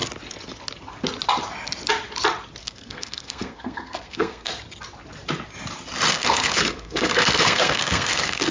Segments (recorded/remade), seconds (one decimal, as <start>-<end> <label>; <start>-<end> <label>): 0.0-2.6 recorded; 2.6-4.5 remade; 4.5-6.1 recorded; 6.1-8.5 remade